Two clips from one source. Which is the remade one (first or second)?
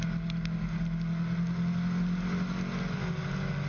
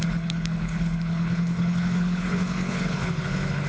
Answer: second